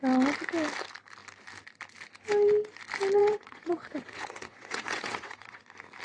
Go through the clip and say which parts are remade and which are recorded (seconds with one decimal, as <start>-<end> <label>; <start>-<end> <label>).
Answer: 0.0-3.2 recorded; 3.2-5.6 remade; 5.6-6.0 recorded